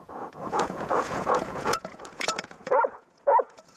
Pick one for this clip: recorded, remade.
remade